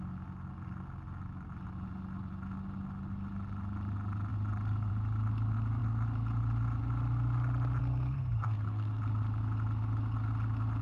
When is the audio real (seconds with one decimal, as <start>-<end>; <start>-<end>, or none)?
0.0-7.8; 9.0-10.8